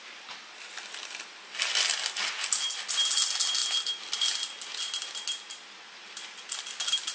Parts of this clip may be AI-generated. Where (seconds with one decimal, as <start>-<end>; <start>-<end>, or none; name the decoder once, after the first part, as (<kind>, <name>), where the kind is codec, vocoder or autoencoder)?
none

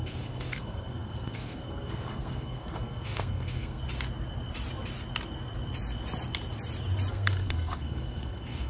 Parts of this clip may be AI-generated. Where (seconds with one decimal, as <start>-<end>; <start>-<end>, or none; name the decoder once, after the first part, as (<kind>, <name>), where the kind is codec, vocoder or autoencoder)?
0.0-3.8 (codec, SNAC); 7.1-8.7

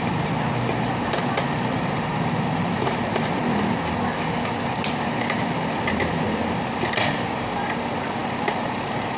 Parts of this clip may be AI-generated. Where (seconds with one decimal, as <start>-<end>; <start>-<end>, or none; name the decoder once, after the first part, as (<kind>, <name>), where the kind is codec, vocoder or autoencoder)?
0.0-3.4 (vocoder, BigVGAN v2); 5.4-9.2

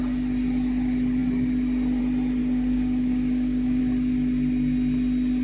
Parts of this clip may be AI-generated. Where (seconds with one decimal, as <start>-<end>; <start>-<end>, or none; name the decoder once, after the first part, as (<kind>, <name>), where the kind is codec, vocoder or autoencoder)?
2.4-3.8 (codec, DAC)

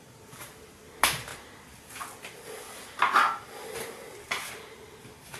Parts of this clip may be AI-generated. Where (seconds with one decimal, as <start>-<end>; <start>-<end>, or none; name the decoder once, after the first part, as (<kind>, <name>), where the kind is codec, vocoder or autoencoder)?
none